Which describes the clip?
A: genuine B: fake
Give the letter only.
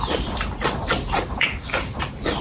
B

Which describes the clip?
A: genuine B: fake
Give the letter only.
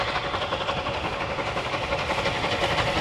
A